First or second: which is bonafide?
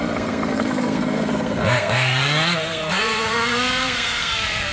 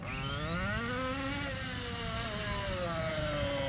second